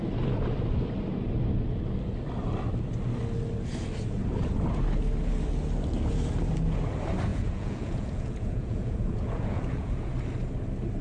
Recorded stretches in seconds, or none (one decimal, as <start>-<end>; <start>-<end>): 0.0-7.3; 10.1-11.0